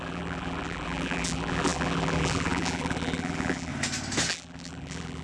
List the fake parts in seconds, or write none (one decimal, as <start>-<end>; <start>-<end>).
0.0-3.7; 4.3-5.2